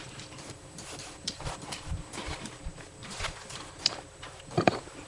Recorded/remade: remade